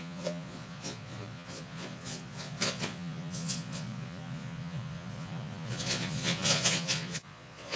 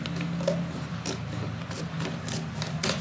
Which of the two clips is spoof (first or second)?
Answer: first